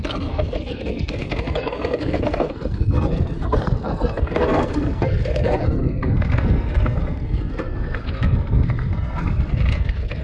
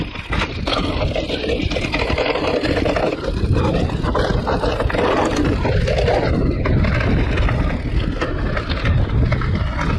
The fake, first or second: first